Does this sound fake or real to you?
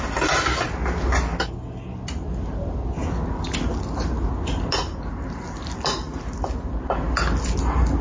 real